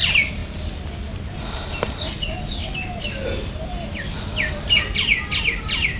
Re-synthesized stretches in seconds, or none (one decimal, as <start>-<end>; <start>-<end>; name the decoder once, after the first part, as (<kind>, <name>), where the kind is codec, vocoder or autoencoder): 4.3-4.8 (vocoder, BigVGAN v2)